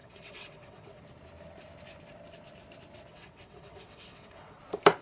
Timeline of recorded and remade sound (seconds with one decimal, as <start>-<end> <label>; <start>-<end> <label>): 0.0-1.0 remade; 1.0-3.1 recorded; 3.1-4.6 remade; 4.6-5.0 recorded